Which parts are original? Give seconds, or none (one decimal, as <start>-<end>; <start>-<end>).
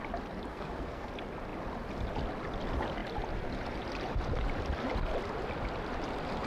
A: 0.0-0.5; 1.1-6.5